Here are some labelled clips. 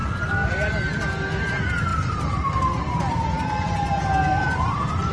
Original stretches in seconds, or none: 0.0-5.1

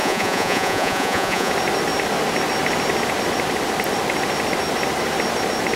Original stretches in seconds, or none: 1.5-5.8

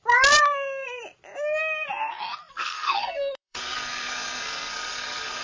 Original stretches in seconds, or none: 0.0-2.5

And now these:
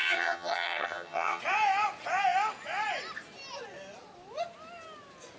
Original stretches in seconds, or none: 1.4-5.4

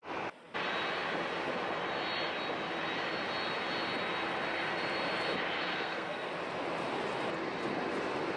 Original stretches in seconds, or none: 0.0-5.7; 6.3-8.4